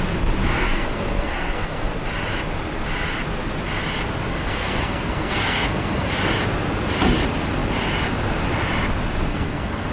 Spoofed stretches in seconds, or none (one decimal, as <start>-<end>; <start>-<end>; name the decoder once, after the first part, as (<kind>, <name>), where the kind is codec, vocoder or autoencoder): 0.5-1.9 (codec, SNAC); 4.3-6.1; 9.3-9.9